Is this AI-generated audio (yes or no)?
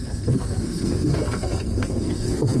yes